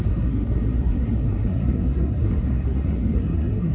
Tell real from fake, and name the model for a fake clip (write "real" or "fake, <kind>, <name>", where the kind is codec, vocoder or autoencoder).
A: fake, codec, SNAC